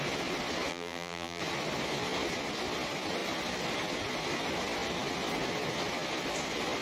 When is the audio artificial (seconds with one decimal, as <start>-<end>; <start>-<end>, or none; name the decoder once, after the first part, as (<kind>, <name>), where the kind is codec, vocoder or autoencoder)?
0.7-1.4 (vocoder, BigVGAN v2)